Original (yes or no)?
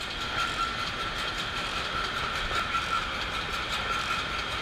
yes